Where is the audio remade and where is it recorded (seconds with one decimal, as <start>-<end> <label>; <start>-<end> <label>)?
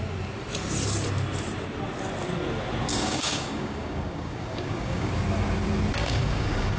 0.0-2.9 recorded; 2.9-5.1 remade; 5.1-6.0 recorded; 6.0-6.8 remade